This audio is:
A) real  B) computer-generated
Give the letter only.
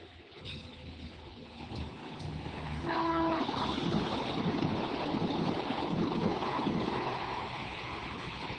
B